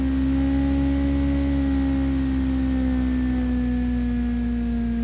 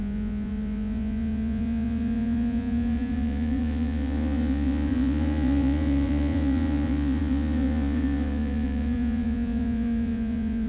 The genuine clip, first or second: first